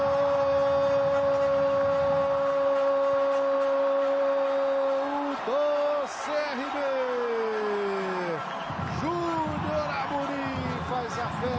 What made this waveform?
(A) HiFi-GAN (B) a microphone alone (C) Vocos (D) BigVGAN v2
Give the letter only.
B